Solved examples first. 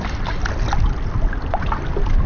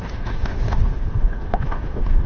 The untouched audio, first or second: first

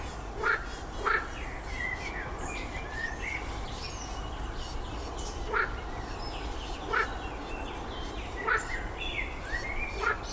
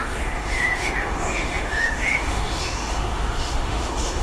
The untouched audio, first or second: first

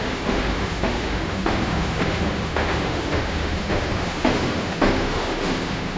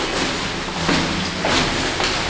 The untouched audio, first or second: second